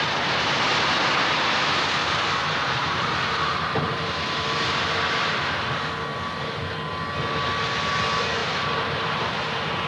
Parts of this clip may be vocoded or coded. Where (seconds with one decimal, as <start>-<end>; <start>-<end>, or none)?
2.0-4.8; 8.4-9.3